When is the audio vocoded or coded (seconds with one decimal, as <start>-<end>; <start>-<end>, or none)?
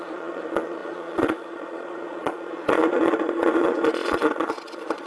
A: 0.0-5.1